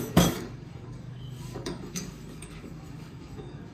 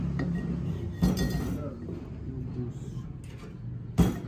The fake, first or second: first